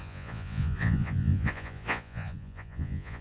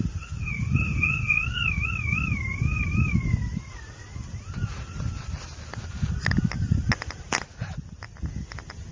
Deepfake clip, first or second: first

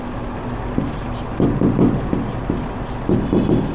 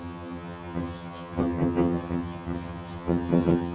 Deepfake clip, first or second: second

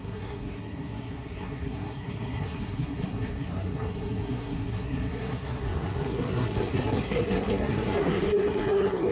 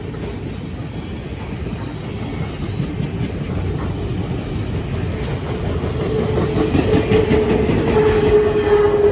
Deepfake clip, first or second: first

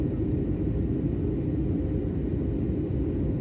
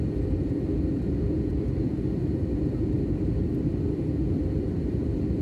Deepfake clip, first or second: second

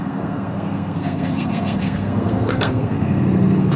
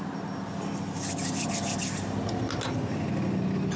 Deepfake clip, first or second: first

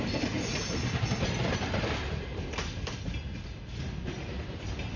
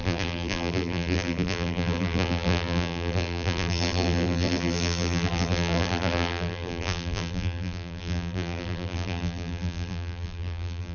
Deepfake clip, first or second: second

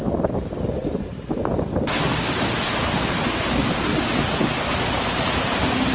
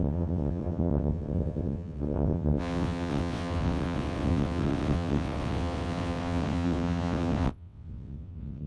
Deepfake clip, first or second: second